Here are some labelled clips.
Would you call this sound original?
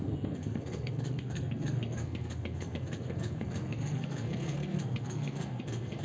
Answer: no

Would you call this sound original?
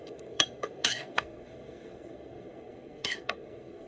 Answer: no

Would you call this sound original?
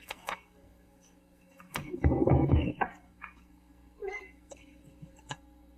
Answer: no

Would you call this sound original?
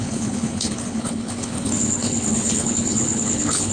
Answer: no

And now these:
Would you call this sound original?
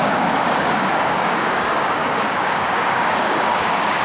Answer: no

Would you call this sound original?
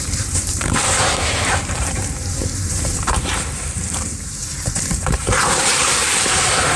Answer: no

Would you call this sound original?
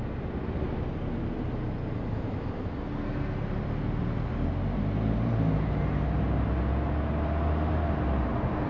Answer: yes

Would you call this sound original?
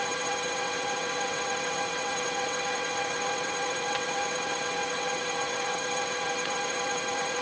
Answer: no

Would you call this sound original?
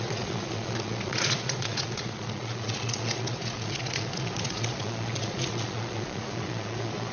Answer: no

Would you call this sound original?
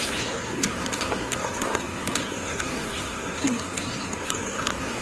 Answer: no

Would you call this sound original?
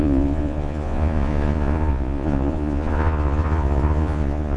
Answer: no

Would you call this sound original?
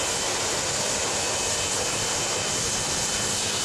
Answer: yes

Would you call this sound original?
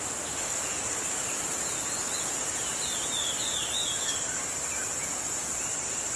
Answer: yes